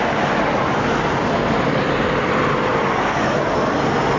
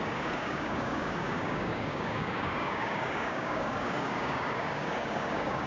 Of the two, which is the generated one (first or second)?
second